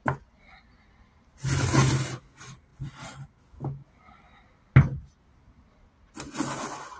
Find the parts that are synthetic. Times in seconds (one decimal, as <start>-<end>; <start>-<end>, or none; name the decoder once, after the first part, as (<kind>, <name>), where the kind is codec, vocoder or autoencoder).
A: none